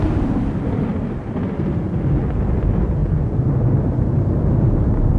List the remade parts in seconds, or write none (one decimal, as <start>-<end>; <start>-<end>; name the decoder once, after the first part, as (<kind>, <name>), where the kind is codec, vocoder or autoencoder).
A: none

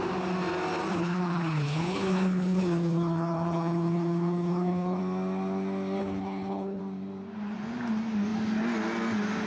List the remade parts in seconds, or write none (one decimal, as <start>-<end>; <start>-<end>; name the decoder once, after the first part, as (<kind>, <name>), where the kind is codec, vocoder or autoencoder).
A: 0.9-5.0 (codec, HILCodec); 6.0-6.8

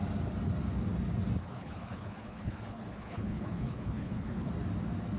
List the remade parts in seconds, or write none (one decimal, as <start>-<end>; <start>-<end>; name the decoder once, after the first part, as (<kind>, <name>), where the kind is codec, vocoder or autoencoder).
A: 1.4-4.5 (codec, HILCodec)

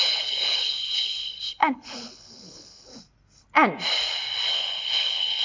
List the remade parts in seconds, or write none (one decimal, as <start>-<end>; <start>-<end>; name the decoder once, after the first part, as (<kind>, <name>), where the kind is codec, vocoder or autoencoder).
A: 0.0-2.9 (codec, HILCodec); 4.5-5.4

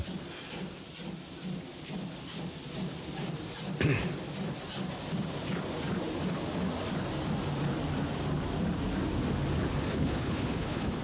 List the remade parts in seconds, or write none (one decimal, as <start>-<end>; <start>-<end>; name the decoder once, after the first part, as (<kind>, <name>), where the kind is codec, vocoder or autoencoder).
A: 9.9-11.0 (codec, HILCodec)

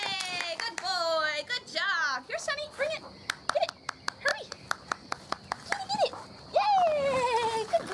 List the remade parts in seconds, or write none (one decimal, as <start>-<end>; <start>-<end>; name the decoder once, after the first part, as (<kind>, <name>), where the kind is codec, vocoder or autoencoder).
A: none

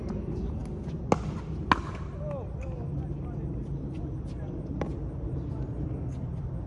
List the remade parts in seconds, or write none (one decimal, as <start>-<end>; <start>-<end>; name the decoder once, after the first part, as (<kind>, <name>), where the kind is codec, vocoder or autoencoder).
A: none